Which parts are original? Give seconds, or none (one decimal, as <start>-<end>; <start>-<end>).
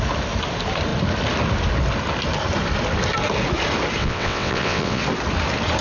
0.0-4.0; 5.0-5.8